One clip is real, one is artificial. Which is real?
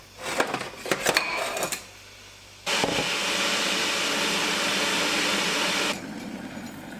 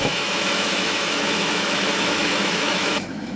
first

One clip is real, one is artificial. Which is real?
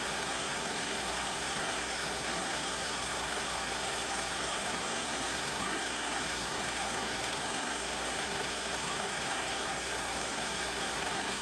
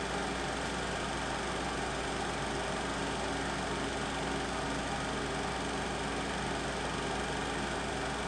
second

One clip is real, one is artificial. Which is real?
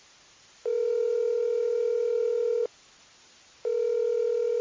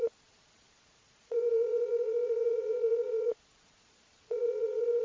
first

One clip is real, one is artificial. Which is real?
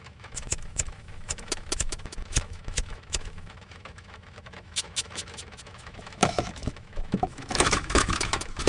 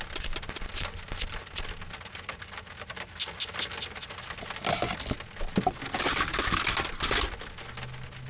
second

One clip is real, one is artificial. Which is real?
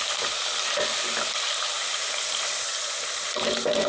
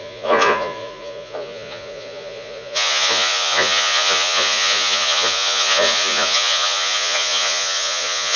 first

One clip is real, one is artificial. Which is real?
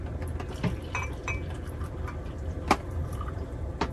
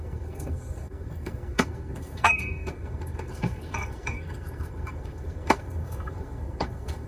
first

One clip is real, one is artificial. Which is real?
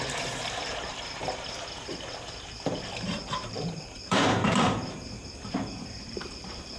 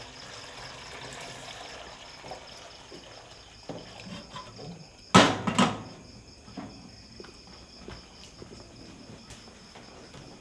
second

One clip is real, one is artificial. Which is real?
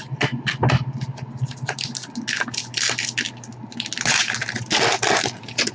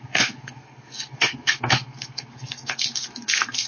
first